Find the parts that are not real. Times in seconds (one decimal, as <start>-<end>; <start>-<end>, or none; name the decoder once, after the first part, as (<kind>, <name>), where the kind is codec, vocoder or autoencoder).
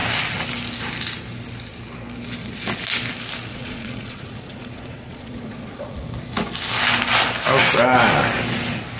3.5-6.0 (vocoder, Vocos)